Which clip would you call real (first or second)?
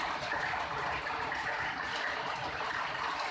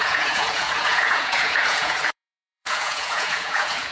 first